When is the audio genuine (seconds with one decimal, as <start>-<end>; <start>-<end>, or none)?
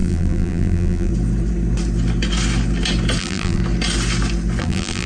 1.1-3.2; 3.6-4.6